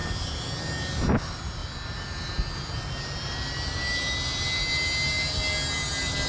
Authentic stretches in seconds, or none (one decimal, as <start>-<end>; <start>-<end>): 0.0-6.3